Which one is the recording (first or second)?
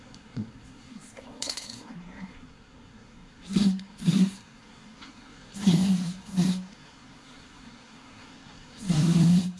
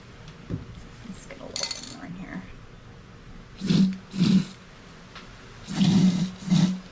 second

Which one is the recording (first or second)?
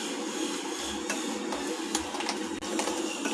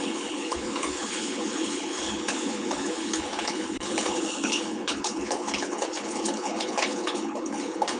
first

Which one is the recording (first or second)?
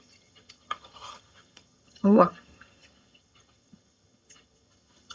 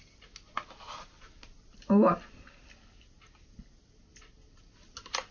second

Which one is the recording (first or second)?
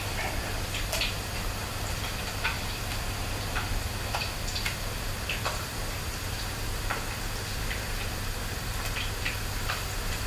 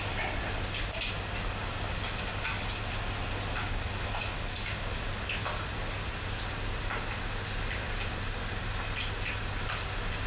second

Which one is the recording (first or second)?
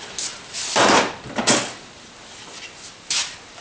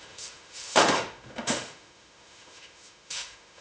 first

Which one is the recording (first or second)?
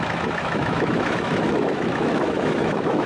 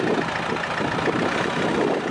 second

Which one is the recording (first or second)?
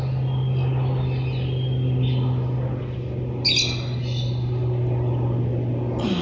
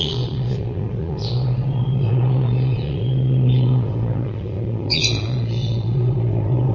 first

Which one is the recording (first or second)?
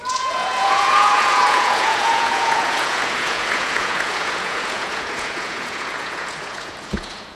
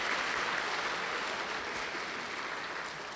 second